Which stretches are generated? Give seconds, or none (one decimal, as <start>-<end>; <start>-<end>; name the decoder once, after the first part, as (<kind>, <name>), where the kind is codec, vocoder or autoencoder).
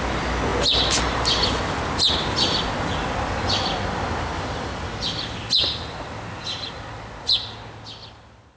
none